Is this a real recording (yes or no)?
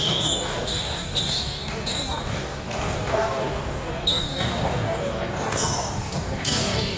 no